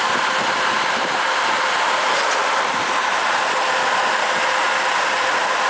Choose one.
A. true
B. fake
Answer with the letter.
A